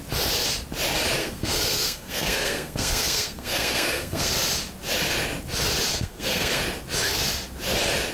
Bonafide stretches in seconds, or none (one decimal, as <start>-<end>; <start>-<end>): 0.0-1.2; 4.3-5.9; 6.6-8.1